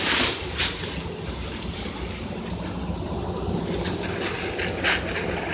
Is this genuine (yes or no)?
yes